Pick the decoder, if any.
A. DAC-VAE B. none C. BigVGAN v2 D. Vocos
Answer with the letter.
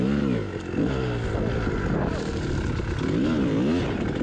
B